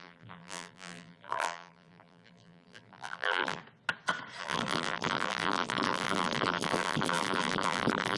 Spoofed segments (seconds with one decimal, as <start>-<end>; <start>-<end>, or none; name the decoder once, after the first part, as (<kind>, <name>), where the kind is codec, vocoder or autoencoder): 0.0-3.6 (vocoder, BigVGAN v2); 4.4-8.2